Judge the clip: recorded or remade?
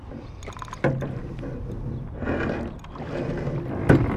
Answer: recorded